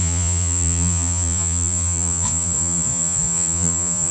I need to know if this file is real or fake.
fake